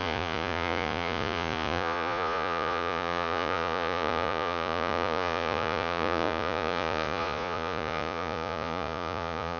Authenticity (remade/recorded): remade